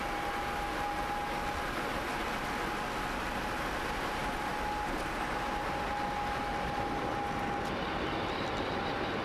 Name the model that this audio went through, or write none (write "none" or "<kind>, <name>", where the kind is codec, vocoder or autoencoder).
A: none